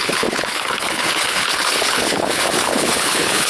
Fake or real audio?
fake